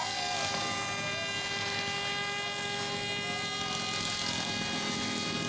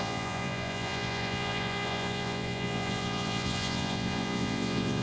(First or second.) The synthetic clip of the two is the second